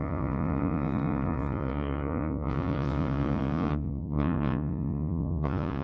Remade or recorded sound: remade